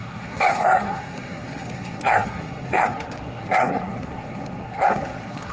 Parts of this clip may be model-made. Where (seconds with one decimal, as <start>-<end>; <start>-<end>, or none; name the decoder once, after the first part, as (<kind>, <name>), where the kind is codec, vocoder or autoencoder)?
0.0-5.5 (codec, SNAC)